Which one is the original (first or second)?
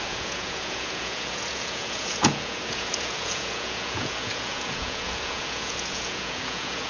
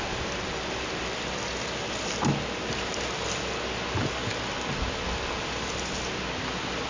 second